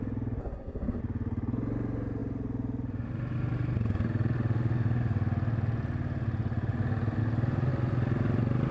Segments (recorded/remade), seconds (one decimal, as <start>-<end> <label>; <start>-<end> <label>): 0.0-0.4 recorded; 0.4-1.0 remade; 1.0-8.7 recorded